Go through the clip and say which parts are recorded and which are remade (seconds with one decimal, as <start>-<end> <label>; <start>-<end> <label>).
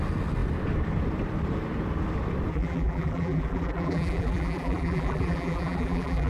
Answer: 0.0-2.5 recorded; 2.5-6.3 remade